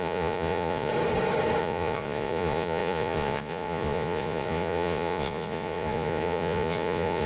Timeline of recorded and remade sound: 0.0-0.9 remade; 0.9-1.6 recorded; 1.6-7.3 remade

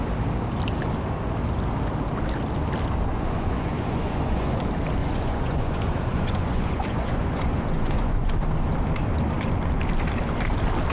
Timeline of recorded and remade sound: 0.0-3.1 recorded; 3.1-4.6 remade; 4.6-5.0 recorded; 5.0-8.3 remade; 8.3-10.9 recorded

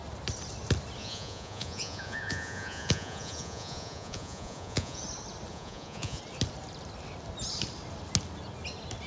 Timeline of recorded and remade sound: 0.0-1.0 recorded; 1.0-5.0 remade; 5.0-5.5 recorded; 5.5-6.2 remade; 6.2-9.1 recorded

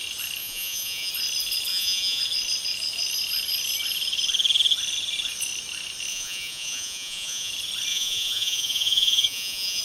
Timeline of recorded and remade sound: 0.0-0.4 recorded; 0.4-1.1 remade; 1.1-1.7 recorded; 1.7-2.2 remade; 2.2-6.1 recorded; 6.1-7.5 remade; 7.5-7.9 recorded; 7.9-9.8 remade

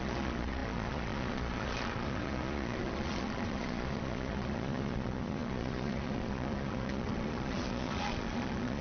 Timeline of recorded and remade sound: 0.0-8.8 remade

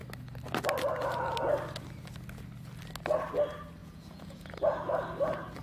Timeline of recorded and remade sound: 0.0-3.8 recorded; 3.8-4.5 remade; 4.5-5.6 recorded